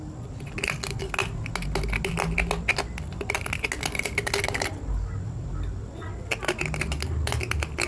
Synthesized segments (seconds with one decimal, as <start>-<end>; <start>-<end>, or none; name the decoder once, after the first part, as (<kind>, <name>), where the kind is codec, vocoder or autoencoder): none